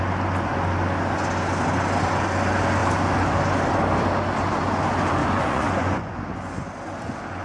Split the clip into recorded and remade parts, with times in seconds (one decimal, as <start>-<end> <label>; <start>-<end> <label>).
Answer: 0.0-5.2 recorded; 5.2-6.2 remade; 6.2-7.4 recorded